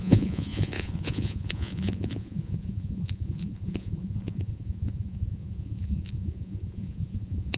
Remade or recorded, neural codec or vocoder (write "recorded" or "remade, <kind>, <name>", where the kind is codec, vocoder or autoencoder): remade, vocoder, Vocos